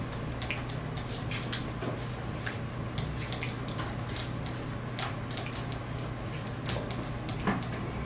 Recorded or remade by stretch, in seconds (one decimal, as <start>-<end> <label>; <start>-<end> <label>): 0.0-8.1 recorded